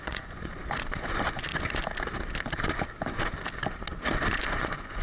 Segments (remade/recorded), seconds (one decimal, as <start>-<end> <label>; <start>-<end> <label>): 0.0-0.6 remade; 0.6-1.1 recorded; 1.1-1.5 remade; 1.5-4.5 recorded; 4.5-5.0 remade